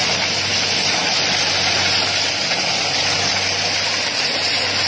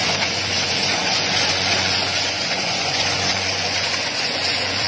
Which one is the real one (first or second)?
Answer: first